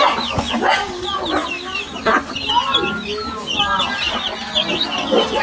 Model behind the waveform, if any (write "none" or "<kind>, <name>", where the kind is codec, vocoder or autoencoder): none